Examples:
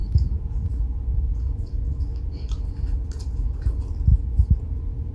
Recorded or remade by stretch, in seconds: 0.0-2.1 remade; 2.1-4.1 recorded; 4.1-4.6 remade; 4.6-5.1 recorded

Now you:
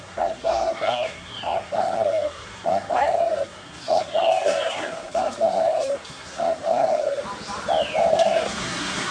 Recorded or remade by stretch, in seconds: 0.0-7.2 remade; 7.2-8.1 recorded; 8.1-9.1 remade

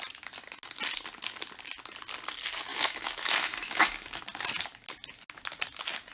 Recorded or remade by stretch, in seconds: 0.0-2.7 recorded; 2.7-4.2 remade; 4.2-6.1 recorded

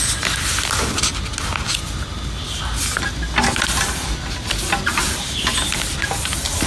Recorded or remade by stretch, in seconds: 0.0-6.7 recorded

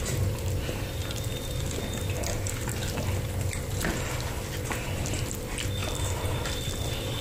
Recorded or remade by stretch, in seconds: 0.0-5.8 recorded; 5.8-6.5 remade; 6.5-7.2 recorded

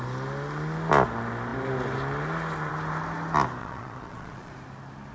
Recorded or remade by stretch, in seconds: 0.0-3.6 recorded; 3.6-4.5 remade; 4.5-5.1 recorded

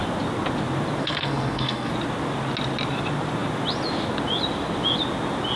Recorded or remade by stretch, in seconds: 0.0-1.0 recorded; 1.0-1.9 remade; 1.9-5.6 recorded